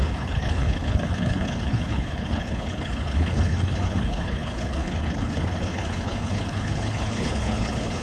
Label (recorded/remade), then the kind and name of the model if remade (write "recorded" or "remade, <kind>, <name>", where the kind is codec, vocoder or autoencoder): remade, codec, HILCodec